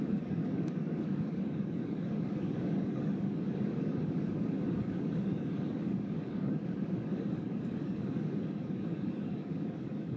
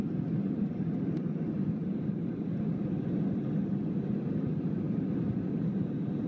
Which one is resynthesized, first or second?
first